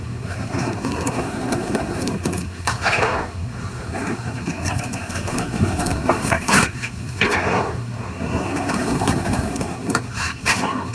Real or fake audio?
fake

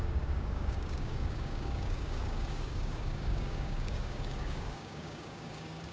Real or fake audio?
fake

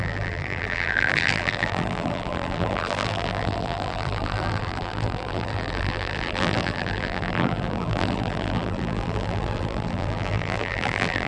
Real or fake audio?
fake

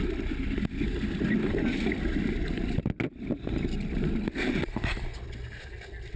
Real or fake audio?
real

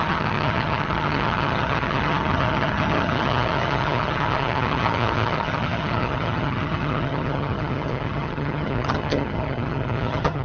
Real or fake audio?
fake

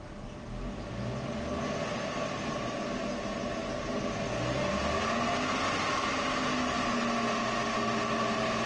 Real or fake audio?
real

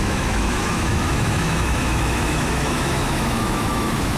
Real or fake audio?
fake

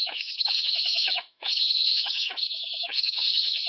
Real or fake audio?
fake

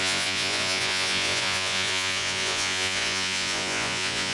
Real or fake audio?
fake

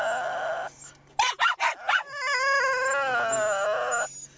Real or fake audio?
real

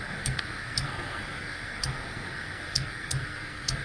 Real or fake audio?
fake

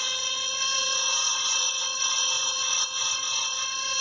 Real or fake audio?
fake